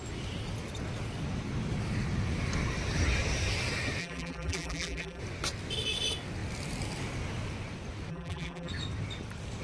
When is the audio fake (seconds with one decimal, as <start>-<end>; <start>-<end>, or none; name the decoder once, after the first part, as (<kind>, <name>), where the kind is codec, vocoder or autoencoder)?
4.0-5.2 (vocoder, BigVGAN v2); 8.1-8.7